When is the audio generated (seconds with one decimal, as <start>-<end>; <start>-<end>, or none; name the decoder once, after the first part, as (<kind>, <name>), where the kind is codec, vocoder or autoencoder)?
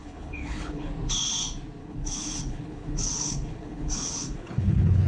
0.0-0.9 (codec, HILCodec); 1.8-5.1